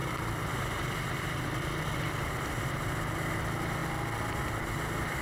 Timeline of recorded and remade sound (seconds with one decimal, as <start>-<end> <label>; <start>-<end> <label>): 0.0-5.2 recorded